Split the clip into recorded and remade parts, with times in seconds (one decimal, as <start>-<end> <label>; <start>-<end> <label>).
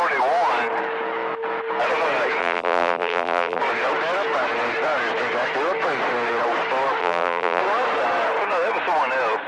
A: 0.0-2.4 recorded; 2.4-3.6 remade; 3.6-7.0 recorded; 7.0-7.6 remade; 7.6-9.5 recorded